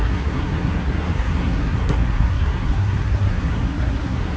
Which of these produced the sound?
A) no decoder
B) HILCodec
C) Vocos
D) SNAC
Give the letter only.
D